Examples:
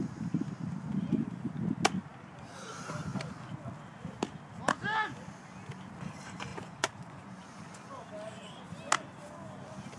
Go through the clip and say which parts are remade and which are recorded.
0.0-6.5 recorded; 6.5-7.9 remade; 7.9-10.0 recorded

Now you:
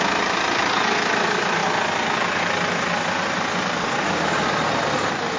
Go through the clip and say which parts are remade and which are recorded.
0.0-5.4 recorded

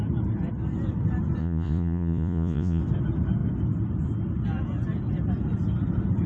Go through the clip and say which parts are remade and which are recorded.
0.0-1.4 recorded; 1.4-2.8 remade; 2.8-6.3 recorded